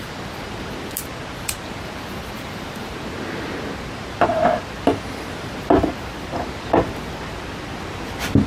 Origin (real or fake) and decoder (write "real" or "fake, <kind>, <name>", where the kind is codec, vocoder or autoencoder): fake, vocoder, BigVGAN v2